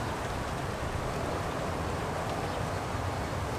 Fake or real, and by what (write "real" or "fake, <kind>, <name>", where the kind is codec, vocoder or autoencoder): fake, vocoder, BigVGAN v2